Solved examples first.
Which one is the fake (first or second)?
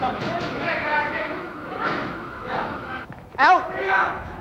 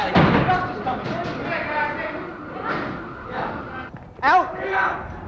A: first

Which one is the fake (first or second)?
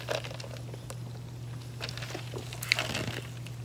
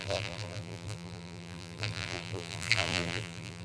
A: second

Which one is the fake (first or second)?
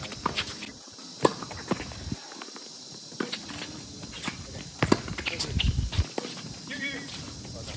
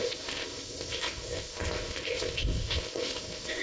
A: second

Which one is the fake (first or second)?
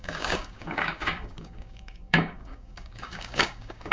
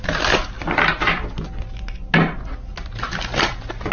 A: first